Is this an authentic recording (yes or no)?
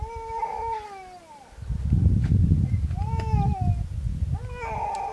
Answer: yes